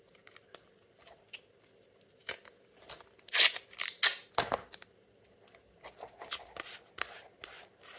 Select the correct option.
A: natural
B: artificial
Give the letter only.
A